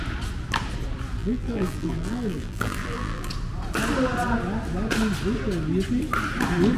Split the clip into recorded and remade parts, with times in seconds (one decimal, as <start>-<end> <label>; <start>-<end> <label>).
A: 0.0-1.2 recorded; 1.2-3.3 remade; 3.3-6.8 recorded